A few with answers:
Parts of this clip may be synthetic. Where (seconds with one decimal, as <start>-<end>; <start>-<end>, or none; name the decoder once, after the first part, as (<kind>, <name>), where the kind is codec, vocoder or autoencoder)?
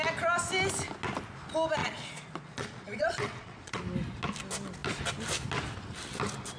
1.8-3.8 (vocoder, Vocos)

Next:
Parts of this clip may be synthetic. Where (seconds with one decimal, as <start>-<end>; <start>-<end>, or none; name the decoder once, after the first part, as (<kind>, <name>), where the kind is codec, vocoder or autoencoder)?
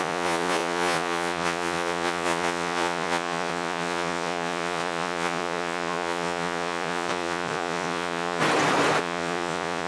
0.0-8.4 (vocoder, Vocos); 9.0-9.9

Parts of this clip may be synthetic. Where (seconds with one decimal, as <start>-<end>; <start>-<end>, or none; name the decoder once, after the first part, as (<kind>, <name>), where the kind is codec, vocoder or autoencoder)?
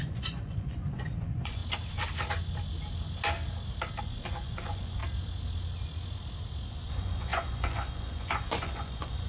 0.0-1.6 (vocoder, Vocos); 4.0-5.0; 6.7-9.3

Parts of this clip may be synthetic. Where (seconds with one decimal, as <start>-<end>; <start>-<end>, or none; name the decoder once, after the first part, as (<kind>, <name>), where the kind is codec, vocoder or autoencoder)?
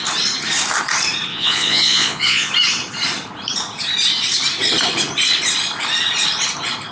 1.3-2.5 (vocoder, Vocos)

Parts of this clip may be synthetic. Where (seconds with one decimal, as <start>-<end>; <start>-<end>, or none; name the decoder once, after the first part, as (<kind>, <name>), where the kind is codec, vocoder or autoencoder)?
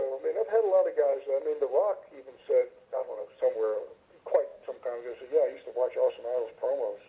2.6-3.4 (vocoder, Vocos)